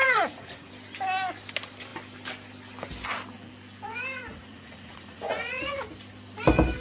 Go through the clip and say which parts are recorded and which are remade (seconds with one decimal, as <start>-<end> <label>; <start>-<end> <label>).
0.0-0.7 remade; 0.7-4.3 recorded; 4.3-5.8 remade; 5.8-6.8 recorded